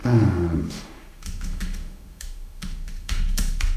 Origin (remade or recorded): remade